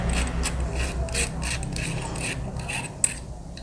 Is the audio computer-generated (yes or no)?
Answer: no